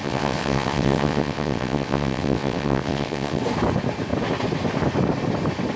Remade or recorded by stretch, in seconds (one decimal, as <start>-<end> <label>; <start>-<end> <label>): 0.0-3.4 remade; 3.4-5.8 recorded